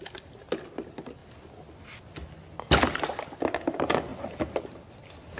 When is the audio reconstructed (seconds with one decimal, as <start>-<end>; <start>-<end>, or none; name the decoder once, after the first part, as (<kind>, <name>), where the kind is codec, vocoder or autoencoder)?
none